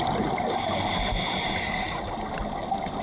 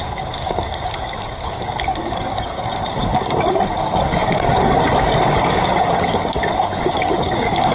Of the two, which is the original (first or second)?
first